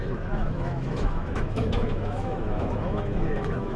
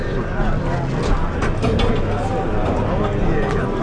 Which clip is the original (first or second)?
second